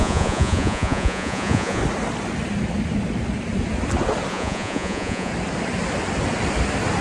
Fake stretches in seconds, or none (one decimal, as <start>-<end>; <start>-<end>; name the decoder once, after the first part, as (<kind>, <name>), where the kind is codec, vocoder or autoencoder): 0.0-1.8 (vocoder, Vocos); 4.3-5.3